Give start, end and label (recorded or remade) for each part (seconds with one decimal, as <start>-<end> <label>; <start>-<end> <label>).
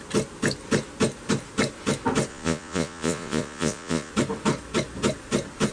0.0-2.3 recorded; 2.3-4.1 remade; 4.1-5.7 recorded